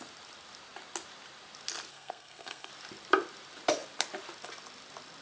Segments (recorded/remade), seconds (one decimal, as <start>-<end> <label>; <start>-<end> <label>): 0.0-1.9 recorded; 1.9-2.7 remade; 2.7-5.2 recorded